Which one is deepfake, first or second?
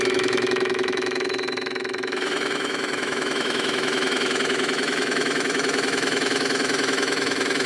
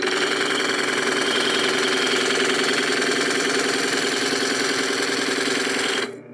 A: first